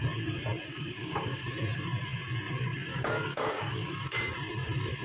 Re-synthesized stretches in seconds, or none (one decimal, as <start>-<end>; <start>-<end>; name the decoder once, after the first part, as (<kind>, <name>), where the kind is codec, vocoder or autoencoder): 0.7-1.4 (codec, DAC); 2.9-4.3